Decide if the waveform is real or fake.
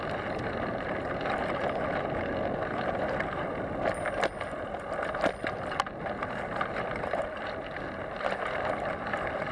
real